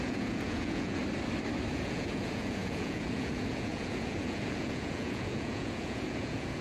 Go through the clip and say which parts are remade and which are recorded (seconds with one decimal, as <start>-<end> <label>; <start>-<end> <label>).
0.0-1.0 remade; 1.0-1.7 recorded; 1.7-6.6 remade